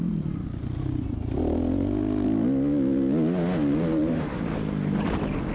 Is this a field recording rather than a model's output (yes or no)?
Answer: yes